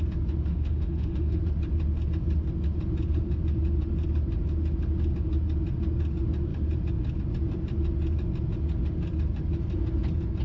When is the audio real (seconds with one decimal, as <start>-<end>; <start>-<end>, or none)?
0.0-0.5; 1.4-10.4